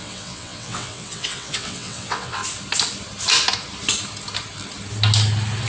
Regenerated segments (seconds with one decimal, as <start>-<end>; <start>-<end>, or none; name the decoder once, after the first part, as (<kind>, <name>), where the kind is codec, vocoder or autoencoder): 0.0-2.4 (vocoder, WaveNeXt)